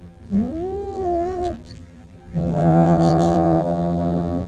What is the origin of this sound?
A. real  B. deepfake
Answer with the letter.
B